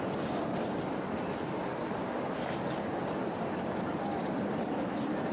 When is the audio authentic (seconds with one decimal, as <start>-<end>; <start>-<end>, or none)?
0.0-5.3